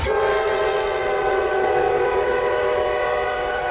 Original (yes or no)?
no